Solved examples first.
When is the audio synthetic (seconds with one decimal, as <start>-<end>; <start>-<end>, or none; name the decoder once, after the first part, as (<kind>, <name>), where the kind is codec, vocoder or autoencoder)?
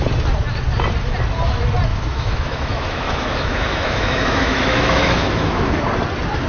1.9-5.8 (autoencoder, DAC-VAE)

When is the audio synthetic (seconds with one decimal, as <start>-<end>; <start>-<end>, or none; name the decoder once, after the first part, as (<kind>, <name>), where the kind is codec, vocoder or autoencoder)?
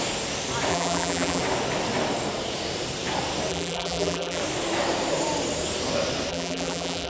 0.7-1.4 (vocoder, BigVGAN v2); 3.5-4.4; 6.3-7.1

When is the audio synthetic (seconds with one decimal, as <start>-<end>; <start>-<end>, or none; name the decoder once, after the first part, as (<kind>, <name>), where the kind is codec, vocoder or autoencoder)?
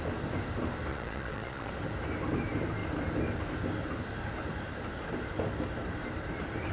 0.9-1.7 (vocoder, Vocos)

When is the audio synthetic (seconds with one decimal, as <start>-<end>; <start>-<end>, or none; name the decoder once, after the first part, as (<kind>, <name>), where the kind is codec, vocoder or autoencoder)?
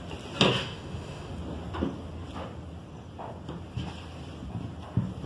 0.6-1.3 (autoencoder, DAC-VAE)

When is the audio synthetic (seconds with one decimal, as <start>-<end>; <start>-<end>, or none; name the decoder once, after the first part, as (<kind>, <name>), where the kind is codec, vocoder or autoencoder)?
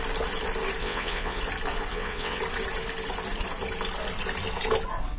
0.8-1.4 (vocoder, WaveNeXt); 1.9-2.4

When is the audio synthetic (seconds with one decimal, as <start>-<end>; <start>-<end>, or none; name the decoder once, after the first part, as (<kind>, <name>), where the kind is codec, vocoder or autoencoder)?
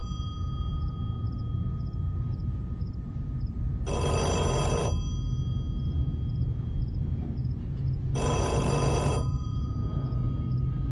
7.4-10.3 (vocoder, Vocos)